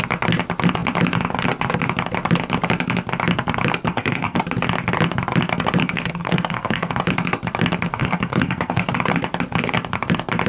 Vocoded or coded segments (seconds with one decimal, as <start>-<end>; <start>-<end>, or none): 3.9-4.4; 5.8-6.9; 7.9-8.9